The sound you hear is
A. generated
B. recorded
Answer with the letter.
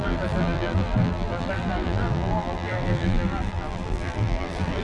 A